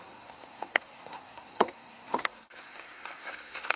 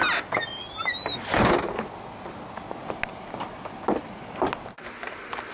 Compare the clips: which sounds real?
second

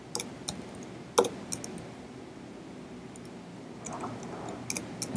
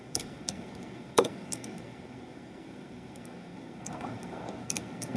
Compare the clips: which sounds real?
first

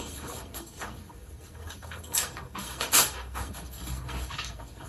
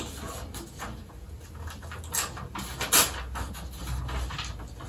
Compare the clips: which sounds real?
second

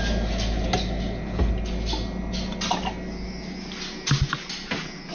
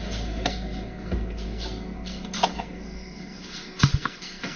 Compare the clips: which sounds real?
first